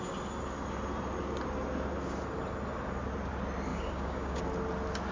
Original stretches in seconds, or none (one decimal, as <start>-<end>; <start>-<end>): 0.0-3.7; 4.4-5.1